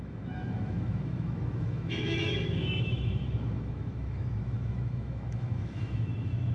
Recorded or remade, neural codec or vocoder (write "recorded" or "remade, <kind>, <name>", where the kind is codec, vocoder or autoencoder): remade, autoencoder, DAC-VAE